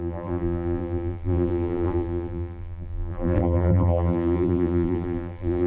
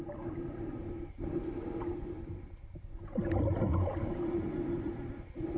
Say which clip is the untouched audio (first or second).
second